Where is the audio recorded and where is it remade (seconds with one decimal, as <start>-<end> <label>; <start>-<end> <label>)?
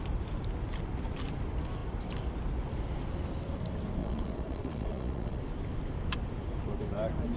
0.0-4.0 recorded; 4.0-5.4 remade; 5.4-7.4 recorded